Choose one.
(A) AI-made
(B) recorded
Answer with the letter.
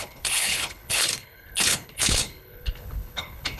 A